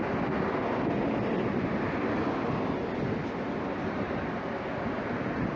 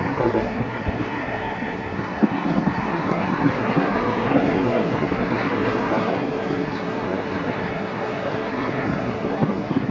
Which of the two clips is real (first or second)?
first